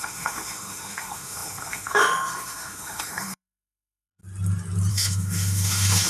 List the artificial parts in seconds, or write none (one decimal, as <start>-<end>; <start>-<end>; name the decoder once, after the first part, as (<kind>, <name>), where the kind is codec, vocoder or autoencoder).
0.0-4.2 (autoencoder, DAC-VAE); 4.9-6.1